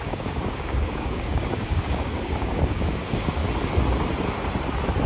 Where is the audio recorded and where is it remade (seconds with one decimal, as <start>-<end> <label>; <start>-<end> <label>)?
0.0-3.4 remade; 3.4-5.1 recorded